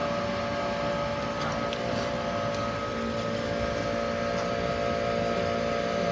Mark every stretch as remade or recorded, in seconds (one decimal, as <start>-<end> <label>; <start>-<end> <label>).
0.0-6.1 recorded